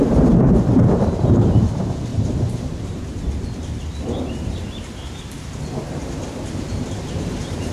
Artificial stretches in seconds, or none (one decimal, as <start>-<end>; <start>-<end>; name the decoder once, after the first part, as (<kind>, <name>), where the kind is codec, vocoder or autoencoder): 0.0-7.7 (vocoder, BigVGAN v2)